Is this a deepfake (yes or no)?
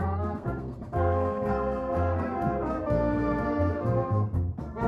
yes